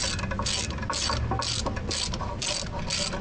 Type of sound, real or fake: real